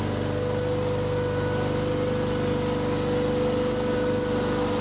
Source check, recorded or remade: recorded